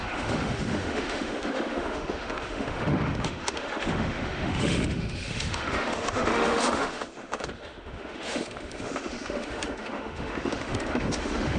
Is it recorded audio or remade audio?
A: remade